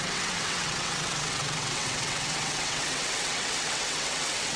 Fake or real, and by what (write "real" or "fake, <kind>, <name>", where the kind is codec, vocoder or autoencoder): fake, vocoder, WaveNeXt